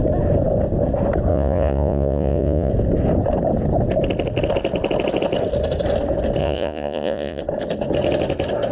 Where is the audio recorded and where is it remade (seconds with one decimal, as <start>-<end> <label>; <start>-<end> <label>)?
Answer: 0.0-1.3 recorded; 1.3-2.7 remade; 2.7-6.4 recorded; 6.4-7.4 remade; 7.4-8.7 recorded